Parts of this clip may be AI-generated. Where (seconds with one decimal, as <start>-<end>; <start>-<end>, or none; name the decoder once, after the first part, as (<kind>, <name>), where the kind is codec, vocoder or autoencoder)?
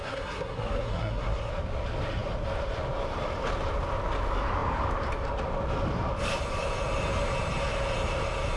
0.0-1.5 (codec, SNAC)